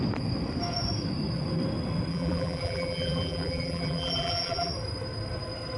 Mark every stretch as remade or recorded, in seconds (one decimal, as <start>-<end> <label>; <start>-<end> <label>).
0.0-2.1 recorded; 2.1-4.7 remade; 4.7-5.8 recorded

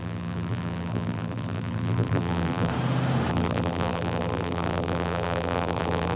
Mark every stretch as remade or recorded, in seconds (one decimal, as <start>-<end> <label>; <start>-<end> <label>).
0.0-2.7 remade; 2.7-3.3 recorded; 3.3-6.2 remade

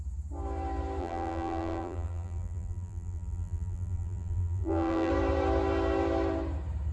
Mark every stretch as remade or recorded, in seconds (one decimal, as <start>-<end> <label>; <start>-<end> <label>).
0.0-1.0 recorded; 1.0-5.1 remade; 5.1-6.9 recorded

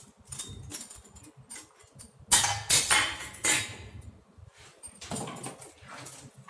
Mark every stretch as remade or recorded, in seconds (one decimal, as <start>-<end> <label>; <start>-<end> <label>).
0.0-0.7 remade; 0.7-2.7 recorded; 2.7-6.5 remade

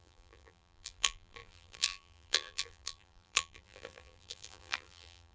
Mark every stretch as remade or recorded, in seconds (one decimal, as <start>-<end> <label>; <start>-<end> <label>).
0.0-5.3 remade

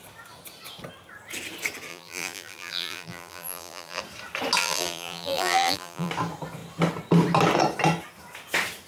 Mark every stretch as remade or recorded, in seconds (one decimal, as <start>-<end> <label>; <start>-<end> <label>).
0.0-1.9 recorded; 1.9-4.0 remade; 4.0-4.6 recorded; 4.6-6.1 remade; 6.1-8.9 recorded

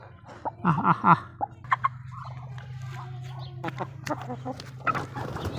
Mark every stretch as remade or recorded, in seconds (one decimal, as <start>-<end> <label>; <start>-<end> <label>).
0.0-5.6 recorded

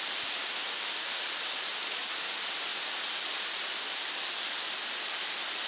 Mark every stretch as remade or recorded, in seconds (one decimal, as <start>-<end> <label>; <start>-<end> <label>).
0.0-0.4 recorded; 0.4-1.7 remade; 1.7-5.7 recorded